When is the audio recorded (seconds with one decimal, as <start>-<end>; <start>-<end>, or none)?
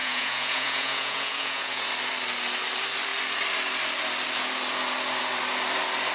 1.9-6.1